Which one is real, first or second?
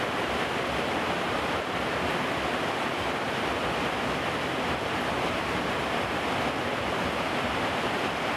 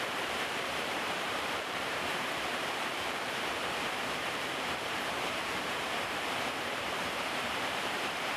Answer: first